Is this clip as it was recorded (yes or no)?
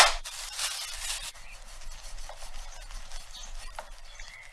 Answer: yes